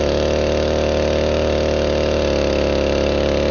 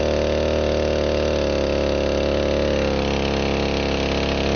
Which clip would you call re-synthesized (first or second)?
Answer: first